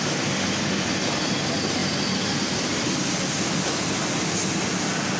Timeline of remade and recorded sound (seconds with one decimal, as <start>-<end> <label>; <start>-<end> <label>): 0.0-5.2 recorded